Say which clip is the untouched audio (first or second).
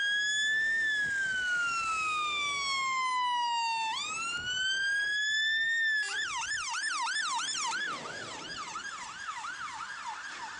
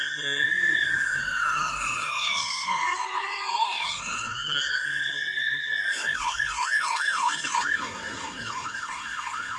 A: first